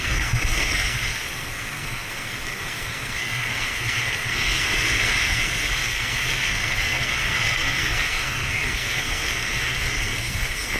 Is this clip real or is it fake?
fake